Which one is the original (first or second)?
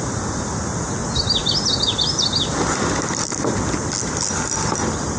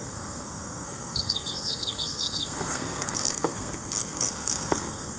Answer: first